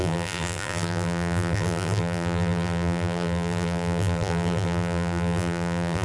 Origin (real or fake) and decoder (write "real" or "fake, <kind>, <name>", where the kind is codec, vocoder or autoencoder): fake, vocoder, BigVGAN v2